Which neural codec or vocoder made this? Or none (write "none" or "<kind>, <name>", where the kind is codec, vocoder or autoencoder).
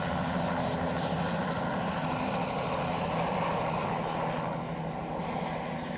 none